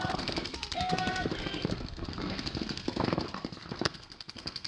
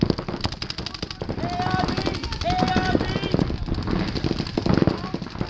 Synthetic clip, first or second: first